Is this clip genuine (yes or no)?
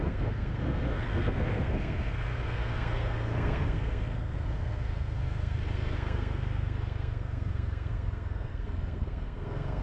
no